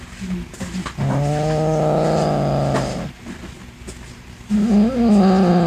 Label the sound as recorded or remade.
recorded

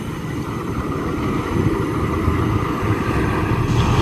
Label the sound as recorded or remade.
recorded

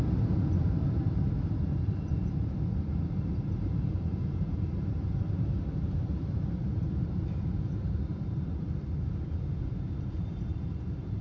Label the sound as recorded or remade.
remade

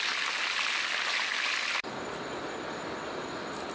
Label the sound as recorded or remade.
recorded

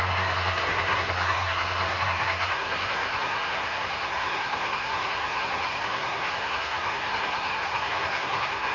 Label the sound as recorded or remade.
remade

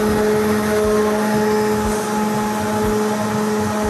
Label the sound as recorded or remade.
recorded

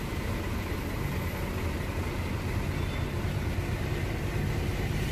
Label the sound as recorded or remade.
recorded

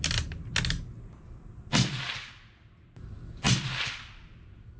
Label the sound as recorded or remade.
recorded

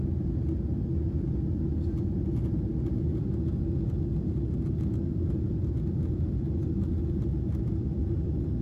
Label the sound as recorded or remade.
recorded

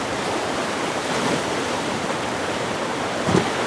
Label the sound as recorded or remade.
remade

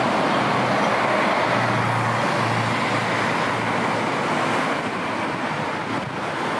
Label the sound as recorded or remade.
recorded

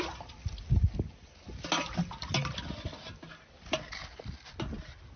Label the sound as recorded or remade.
recorded